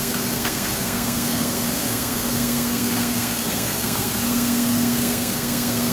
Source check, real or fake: fake